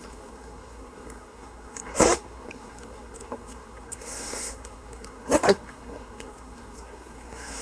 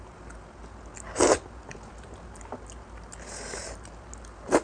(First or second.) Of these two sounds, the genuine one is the second